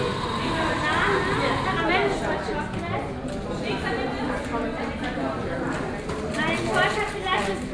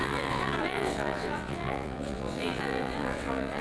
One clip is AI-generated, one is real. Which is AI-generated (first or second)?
second